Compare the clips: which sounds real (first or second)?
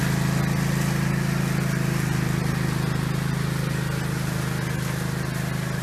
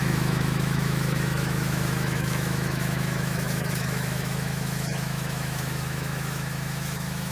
first